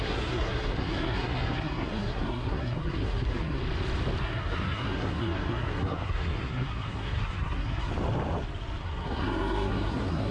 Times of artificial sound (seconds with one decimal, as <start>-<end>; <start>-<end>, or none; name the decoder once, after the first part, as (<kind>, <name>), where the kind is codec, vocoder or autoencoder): 0.0-3.6 (codec, SNAC); 4.2-7.9; 8.8-10.3